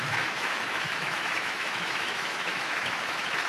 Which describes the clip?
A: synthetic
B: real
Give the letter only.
A